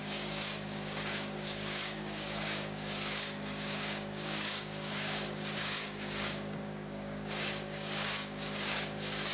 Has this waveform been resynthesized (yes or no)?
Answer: yes